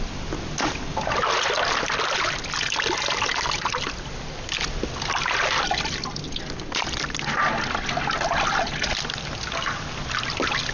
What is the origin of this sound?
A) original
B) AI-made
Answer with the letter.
A